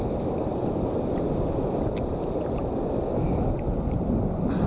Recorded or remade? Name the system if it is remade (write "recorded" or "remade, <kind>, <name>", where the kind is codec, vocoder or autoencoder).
recorded